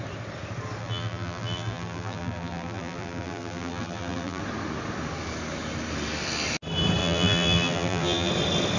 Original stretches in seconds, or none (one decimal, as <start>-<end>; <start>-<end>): 0.0-0.8; 4.4-7.0; 8.3-8.8